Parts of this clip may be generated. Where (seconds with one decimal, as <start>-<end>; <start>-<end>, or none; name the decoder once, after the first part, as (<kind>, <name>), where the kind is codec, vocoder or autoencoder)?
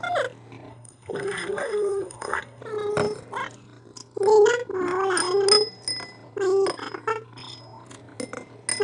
0.7-2.6 (codec, SNAC)